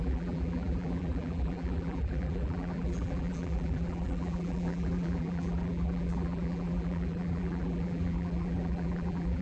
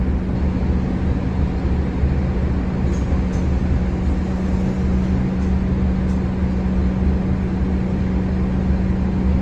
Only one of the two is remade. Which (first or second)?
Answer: first